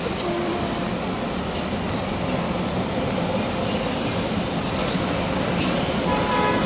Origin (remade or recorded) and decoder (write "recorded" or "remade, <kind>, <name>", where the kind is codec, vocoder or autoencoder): recorded